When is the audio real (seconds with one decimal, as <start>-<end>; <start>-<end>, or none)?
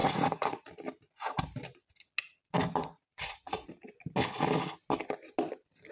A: 0.6-2.8; 3.7-5.9